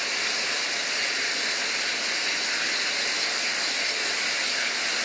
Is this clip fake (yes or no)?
no